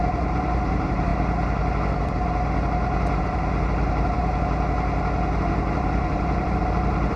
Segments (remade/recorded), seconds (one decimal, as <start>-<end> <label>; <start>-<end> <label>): 0.0-1.1 remade; 1.1-3.2 recorded; 3.2-4.2 remade; 4.2-5.7 recorded; 5.7-7.2 remade